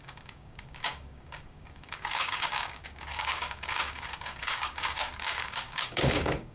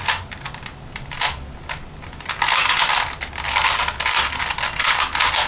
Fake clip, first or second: first